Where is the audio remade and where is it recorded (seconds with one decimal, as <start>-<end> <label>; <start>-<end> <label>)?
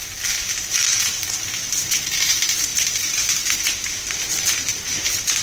0.0-0.9 recorded; 0.9-1.4 remade; 1.4-2.7 recorded; 2.7-3.9 remade; 3.9-4.7 recorded; 4.7-5.4 remade